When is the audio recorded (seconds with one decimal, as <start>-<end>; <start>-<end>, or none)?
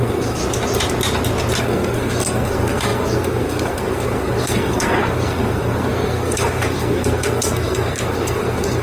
0.4-1.6